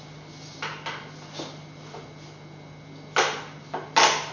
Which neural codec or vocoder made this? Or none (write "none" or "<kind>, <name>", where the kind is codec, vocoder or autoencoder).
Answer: none